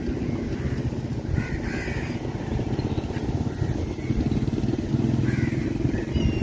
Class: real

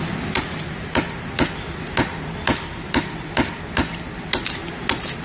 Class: real